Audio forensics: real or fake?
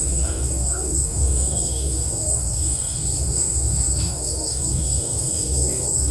fake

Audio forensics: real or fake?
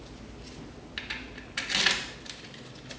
real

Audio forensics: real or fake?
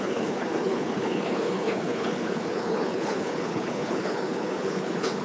fake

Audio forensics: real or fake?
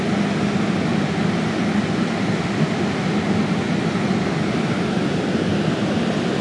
real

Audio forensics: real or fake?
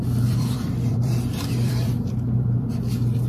fake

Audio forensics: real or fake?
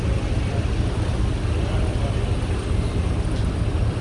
real